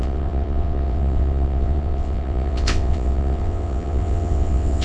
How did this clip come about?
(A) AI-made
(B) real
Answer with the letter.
A